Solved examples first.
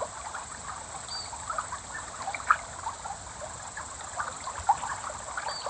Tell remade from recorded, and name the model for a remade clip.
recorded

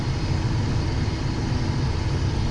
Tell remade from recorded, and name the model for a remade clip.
recorded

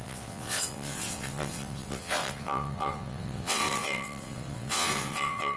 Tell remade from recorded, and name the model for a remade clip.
remade, vocoder, WaveNeXt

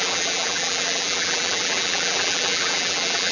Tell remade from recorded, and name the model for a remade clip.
remade, vocoder, BigVGAN v2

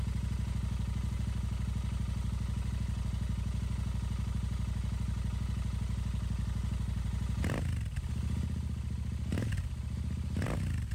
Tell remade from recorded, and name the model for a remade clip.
recorded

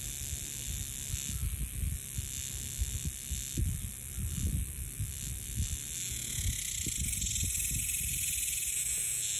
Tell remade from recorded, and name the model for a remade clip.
recorded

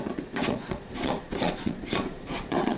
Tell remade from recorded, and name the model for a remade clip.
remade, vocoder, Vocos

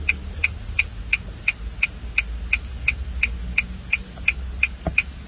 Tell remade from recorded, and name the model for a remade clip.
recorded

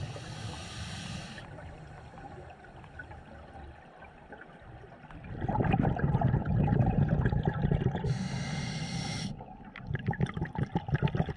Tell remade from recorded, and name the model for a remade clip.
recorded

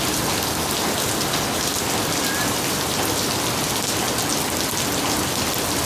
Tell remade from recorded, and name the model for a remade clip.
recorded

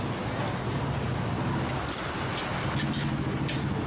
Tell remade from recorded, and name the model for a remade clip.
recorded